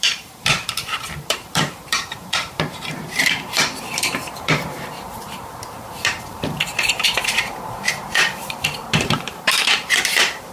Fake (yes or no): yes